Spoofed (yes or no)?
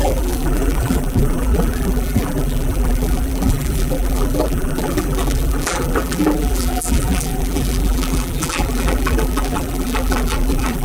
yes